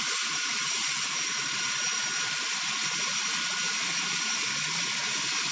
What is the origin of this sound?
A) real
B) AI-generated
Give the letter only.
A